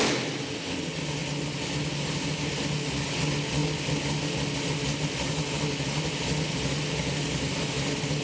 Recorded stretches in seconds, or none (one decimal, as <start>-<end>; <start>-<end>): 0.0-8.2